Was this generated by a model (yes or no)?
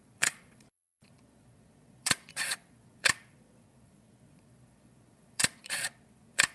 yes